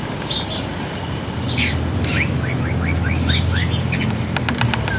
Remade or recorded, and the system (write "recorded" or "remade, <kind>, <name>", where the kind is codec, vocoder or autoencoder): recorded